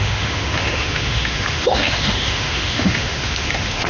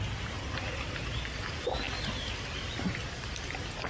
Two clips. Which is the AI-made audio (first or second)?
first